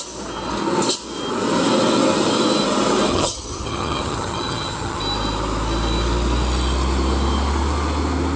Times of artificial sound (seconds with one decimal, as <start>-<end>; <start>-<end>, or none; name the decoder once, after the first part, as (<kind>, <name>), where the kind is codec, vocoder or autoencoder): 3.1-5.0 (vocoder, HiFi-GAN)

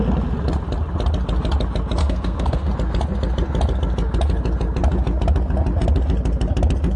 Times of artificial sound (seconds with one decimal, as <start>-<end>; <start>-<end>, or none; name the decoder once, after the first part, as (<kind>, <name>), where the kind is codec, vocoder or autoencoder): 2.0-2.7 (codec, SNAC)

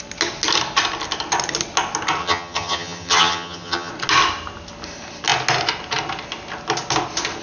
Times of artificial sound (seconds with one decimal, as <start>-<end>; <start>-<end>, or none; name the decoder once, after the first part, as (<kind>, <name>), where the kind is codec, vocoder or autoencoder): 2.2-3.9 (vocoder, HiFi-GAN)

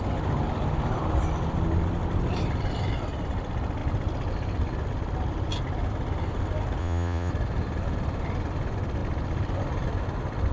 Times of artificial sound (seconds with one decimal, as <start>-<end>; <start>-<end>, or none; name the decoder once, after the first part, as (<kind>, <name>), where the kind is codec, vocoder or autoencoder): 6.8-7.3 (vocoder, Vocos)

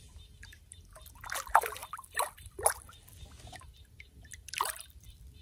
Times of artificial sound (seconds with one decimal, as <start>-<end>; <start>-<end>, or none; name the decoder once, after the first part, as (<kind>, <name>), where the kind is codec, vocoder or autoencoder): none

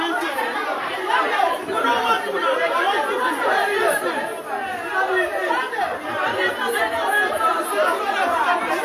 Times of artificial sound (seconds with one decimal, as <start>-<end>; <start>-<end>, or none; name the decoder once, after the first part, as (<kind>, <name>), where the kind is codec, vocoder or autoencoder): 0.0-8.8 (vocoder, BigVGAN v2)